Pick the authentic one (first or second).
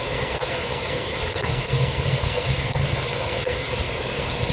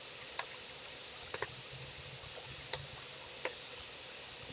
second